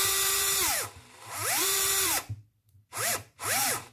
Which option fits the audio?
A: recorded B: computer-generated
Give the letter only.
B